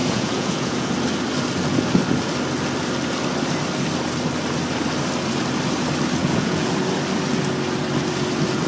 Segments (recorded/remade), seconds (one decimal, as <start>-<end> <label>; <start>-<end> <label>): 0.0-0.9 remade; 0.9-6.2 recorded; 6.2-6.7 remade; 6.7-8.7 recorded